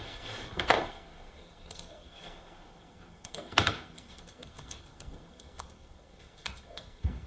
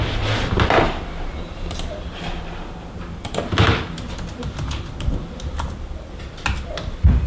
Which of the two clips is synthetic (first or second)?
first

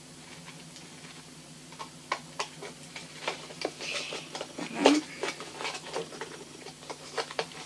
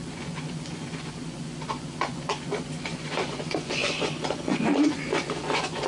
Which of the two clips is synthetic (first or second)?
second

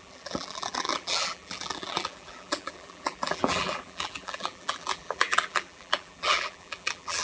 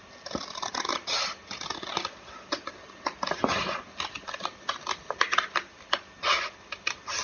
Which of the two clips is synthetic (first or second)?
first